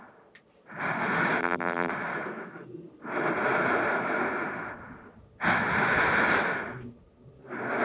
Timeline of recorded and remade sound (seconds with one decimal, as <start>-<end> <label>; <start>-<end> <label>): 0.0-1.4 recorded; 1.4-1.9 remade; 1.9-7.8 recorded